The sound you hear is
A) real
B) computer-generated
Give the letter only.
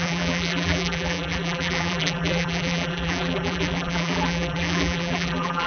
B